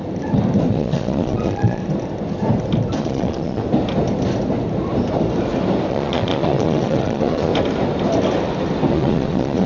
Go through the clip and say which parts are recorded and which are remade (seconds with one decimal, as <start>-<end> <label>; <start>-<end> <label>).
0.0-0.7 recorded; 0.7-1.8 remade; 1.8-3.0 recorded; 3.0-3.6 remade; 3.6-5.9 recorded; 5.9-7.5 remade; 7.5-8.9 recorded; 8.9-9.7 remade